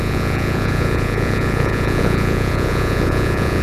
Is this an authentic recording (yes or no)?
no